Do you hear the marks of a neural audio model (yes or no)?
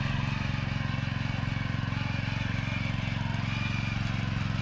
no